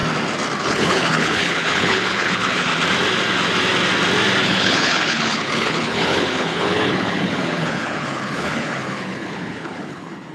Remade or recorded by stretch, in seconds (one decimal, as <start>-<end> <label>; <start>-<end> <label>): 0.0-0.6 recorded; 0.6-2.7 remade; 2.7-4.4 recorded; 4.4-10.3 remade